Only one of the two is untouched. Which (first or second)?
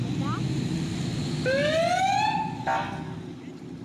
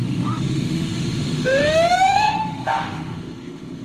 first